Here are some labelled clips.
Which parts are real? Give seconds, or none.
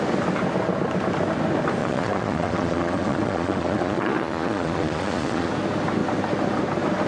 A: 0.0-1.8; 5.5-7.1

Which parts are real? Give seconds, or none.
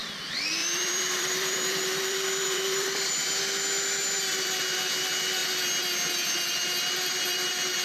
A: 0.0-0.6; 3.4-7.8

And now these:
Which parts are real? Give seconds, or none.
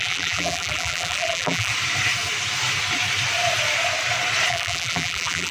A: 1.7-4.5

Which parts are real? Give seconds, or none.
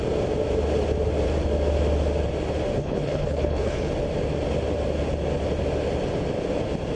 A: 0.0-2.8; 3.9-7.0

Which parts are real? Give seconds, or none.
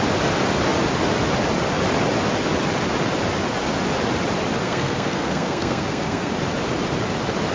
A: 0.0-4.6; 6.3-7.5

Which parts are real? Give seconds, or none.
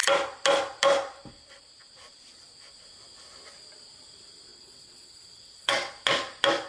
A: 0.0-4.5; 5.9-6.7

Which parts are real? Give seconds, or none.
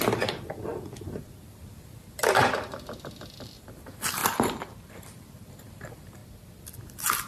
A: 4.2-4.9; 6.2-7.3